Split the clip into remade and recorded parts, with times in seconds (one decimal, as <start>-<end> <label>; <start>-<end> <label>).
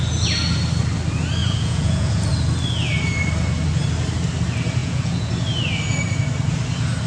0.0-1.4 recorded; 1.4-2.3 remade; 2.3-4.8 recorded; 4.8-5.3 remade; 5.3-7.1 recorded